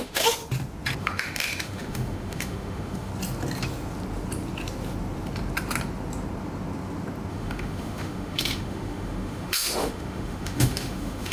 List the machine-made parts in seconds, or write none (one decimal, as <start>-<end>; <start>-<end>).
0.0-0.4; 1.0-3.1; 7.3-11.3